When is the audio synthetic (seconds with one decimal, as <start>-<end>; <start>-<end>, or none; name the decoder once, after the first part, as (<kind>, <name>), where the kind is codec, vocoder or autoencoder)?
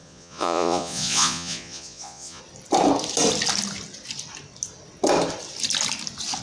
0.0-2.4 (vocoder, Vocos)